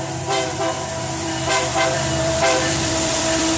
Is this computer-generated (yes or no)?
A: yes